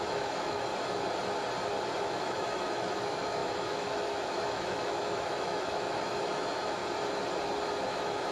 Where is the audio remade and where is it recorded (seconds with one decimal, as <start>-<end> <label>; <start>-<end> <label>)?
0.0-0.7 remade; 0.7-2.0 recorded; 2.0-6.8 remade; 6.8-7.9 recorded; 7.9-8.3 remade